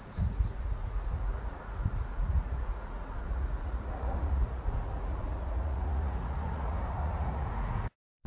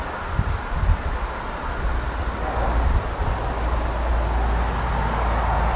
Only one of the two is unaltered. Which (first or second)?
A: second